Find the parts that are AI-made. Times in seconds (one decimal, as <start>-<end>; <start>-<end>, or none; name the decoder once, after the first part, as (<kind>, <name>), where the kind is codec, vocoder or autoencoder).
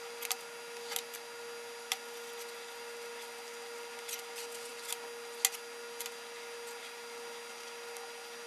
none